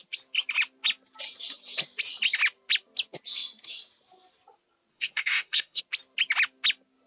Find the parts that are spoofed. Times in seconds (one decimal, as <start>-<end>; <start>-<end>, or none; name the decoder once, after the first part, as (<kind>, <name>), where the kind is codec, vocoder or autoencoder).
4.9-5.8 (codec, SNAC)